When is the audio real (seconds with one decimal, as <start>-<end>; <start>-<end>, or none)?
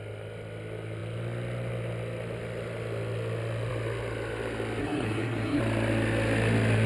0.0-4.8; 5.6-6.9